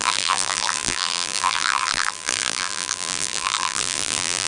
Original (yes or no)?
no